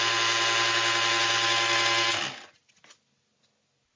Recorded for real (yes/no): yes